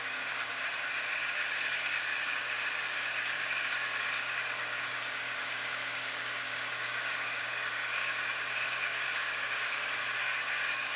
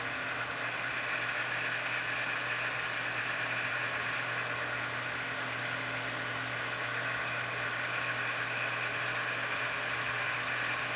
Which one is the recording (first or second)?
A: second